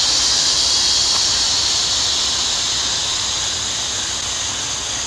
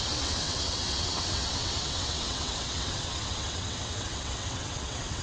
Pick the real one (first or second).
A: first